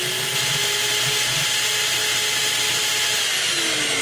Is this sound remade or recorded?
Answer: recorded